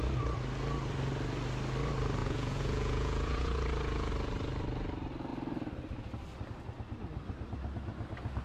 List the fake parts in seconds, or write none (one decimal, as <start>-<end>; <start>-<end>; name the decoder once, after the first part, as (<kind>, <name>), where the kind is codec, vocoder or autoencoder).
2.2-4.1 (vocoder, Vocos)